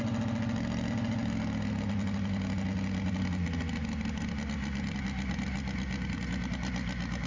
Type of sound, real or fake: real